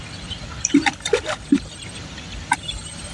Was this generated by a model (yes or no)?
no